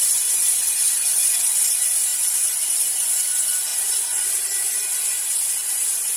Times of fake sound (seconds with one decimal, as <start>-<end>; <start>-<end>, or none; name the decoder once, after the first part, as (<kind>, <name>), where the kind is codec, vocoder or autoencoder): none